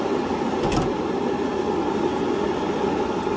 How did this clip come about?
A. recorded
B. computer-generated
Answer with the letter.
A